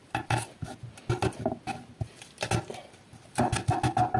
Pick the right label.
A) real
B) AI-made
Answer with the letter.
A